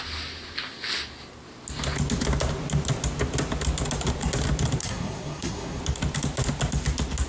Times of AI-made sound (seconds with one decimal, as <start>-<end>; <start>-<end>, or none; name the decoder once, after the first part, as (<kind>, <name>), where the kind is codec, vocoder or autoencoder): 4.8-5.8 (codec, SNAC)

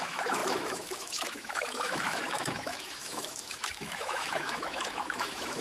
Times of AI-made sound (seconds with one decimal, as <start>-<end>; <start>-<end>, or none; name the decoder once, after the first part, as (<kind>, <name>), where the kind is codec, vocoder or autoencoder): 0.0-5.6 (autoencoder, DAC-VAE)

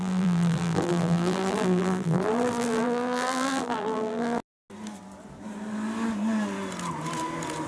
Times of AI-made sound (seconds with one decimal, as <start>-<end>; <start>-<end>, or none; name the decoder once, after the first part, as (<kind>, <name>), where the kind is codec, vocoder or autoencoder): 0.0-4.4 (vocoder, BigVGAN v2)

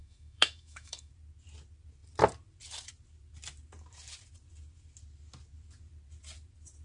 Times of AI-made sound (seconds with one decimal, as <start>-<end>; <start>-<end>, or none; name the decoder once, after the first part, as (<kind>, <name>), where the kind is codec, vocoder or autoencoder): 0.0-1.1 (autoencoder, DAC-VAE)

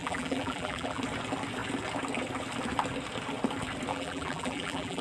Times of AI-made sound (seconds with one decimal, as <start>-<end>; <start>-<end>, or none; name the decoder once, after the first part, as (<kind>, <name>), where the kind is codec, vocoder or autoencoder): 0.0-1.0 (vocoder, BigVGAN v2); 3.9-5.0